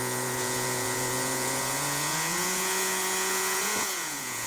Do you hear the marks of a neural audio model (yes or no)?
yes